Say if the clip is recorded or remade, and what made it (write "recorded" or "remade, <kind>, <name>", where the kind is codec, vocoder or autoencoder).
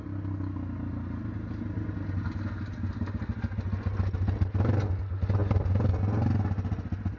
recorded